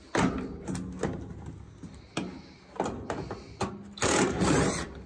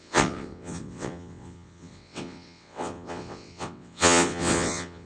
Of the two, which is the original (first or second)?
first